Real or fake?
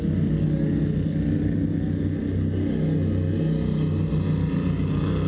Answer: real